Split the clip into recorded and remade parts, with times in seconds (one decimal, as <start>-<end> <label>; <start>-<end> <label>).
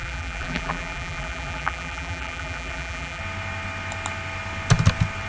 0.0-3.2 remade; 3.2-5.3 recorded